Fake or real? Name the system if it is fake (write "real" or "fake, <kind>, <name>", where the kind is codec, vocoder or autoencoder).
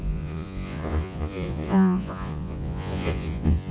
fake, vocoder, Vocos